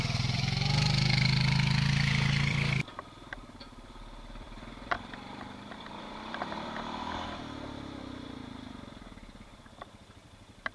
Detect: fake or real fake